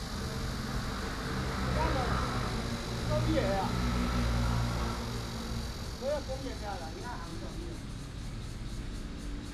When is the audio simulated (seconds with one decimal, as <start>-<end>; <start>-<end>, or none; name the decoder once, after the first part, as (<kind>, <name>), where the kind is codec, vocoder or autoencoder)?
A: none